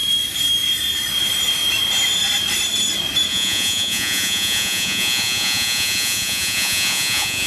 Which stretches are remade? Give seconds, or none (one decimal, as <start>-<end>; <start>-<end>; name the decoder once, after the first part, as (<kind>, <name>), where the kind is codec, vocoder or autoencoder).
3.3-7.5 (vocoder, Vocos)